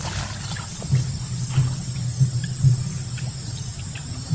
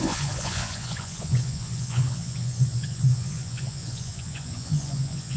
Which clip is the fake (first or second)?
second